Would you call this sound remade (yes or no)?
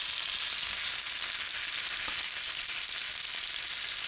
no